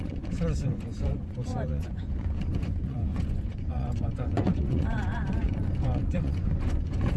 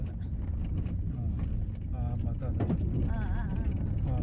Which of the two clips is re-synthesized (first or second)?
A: first